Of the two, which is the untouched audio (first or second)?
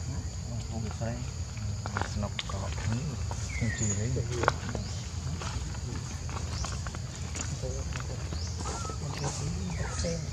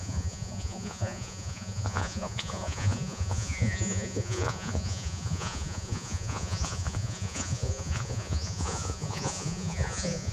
first